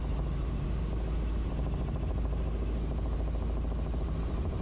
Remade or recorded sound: recorded